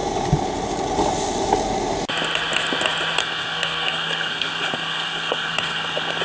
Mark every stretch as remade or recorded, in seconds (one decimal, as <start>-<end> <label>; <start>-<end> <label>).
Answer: 0.0-3.2 recorded; 3.2-6.2 remade